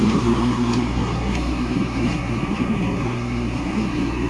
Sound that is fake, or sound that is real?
fake